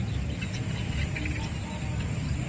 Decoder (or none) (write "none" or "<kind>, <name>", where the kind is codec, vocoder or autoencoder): none